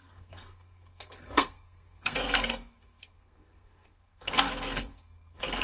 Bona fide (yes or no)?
no